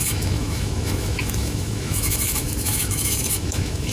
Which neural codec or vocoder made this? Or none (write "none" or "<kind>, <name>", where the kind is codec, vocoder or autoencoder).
autoencoder, DAC-VAE